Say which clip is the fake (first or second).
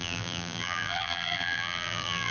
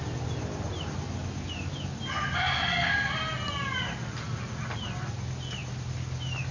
first